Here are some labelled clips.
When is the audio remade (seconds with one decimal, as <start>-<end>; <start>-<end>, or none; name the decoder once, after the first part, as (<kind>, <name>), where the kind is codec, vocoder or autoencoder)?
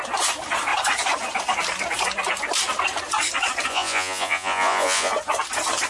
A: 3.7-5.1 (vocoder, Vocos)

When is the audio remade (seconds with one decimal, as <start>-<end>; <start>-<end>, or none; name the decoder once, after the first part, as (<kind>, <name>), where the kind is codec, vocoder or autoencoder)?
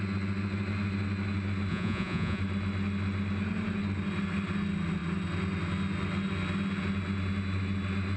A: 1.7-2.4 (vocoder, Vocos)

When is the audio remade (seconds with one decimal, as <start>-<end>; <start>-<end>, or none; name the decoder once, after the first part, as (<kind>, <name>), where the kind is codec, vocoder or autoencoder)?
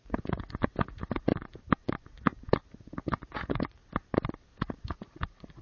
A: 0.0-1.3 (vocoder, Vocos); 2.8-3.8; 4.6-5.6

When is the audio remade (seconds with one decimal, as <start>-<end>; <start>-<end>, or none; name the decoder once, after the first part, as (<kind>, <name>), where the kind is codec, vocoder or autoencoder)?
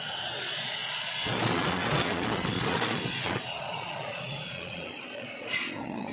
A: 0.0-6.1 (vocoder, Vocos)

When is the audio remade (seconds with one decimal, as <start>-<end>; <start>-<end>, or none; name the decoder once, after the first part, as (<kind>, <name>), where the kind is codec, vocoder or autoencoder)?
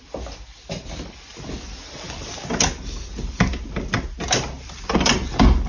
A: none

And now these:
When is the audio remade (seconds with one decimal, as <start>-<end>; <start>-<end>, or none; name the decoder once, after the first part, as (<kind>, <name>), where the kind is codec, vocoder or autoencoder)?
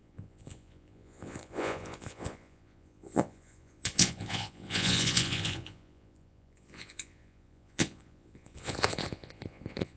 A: 0.0-10.0 (vocoder, Vocos)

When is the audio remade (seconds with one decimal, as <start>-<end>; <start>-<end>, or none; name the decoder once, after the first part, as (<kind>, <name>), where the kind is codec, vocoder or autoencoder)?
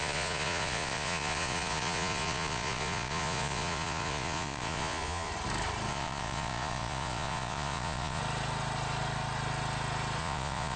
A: 0.0-5.3 (vocoder, Vocos); 5.9-8.2; 10.2-10.8